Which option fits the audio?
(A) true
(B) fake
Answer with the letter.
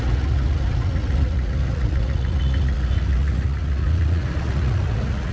B